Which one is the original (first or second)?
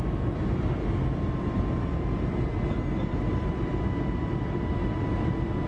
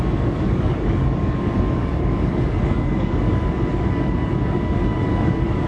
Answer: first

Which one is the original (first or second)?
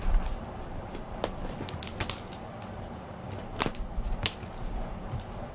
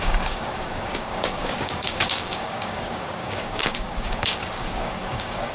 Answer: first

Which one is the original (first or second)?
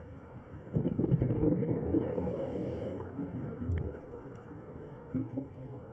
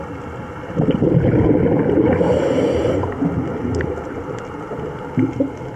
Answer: second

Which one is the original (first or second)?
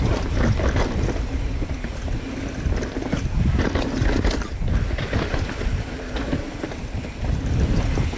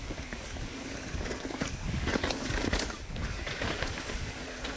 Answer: first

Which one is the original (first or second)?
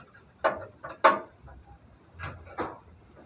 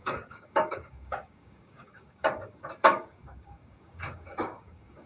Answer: first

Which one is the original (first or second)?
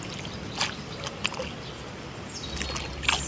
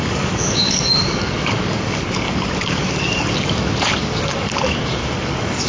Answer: first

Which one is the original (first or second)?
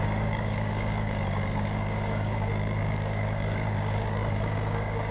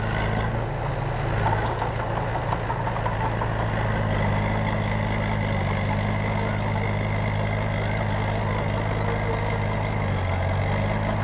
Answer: second